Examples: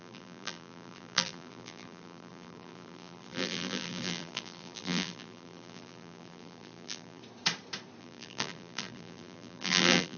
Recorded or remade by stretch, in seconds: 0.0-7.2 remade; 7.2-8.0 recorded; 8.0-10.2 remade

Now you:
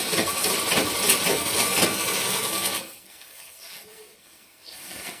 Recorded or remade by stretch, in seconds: 0.0-0.5 remade; 0.5-1.3 recorded; 1.3-5.2 remade

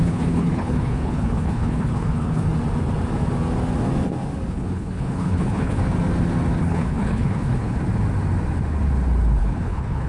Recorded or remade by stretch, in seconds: 0.0-2.5 remade; 2.5-4.5 recorded; 4.5-5.8 remade; 5.8-6.6 recorded; 6.6-7.8 remade; 7.8-9.4 recorded; 9.4-10.1 remade

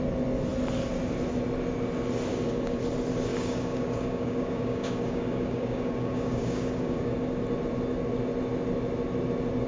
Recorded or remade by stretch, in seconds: 0.0-2.3 recorded; 2.3-2.8 remade; 2.8-3.3 recorded; 3.3-7.4 remade; 7.4-9.7 recorded

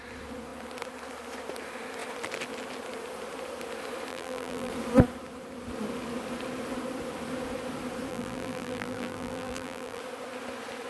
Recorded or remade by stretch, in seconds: 0.0-4.1 recorded; 4.1-4.7 remade; 4.7-8.1 recorded; 8.1-10.0 remade; 10.0-10.9 recorded